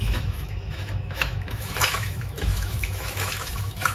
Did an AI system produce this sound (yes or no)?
yes